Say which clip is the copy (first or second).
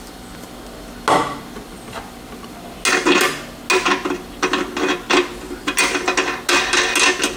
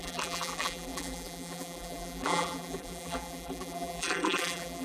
second